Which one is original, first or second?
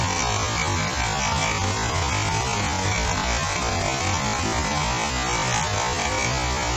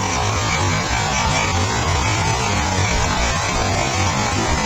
first